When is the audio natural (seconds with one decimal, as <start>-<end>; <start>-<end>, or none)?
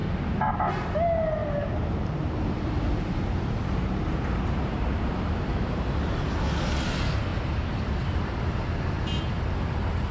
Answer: 0.7-1.4; 6.3-7.3; 7.9-10.1